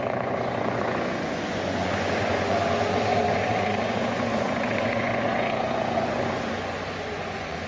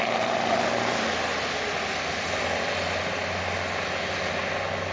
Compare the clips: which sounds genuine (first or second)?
second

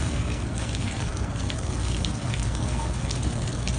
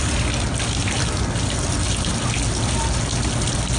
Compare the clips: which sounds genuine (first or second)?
second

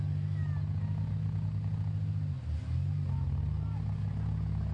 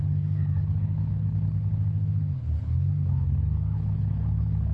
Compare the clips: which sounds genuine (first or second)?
first